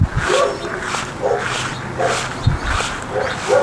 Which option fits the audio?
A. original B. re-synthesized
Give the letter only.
A